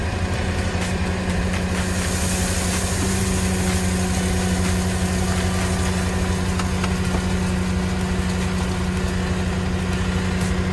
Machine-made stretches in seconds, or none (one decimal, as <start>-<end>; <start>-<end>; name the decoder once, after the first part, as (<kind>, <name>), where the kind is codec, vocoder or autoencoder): 0.0-1.4 (vocoder, BigVGAN v2)